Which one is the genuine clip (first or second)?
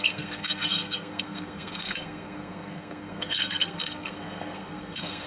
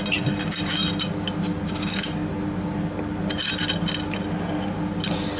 second